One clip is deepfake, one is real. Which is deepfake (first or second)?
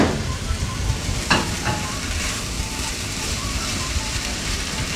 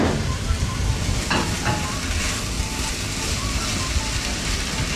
first